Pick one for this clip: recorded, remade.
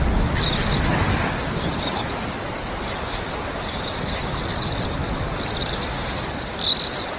recorded